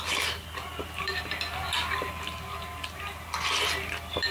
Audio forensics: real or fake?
fake